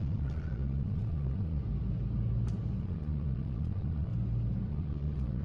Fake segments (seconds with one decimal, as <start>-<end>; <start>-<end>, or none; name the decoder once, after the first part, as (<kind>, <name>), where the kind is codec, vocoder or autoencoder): 0.0-1.6 (vocoder, Vocos); 2.8-4.1; 4.7-5.4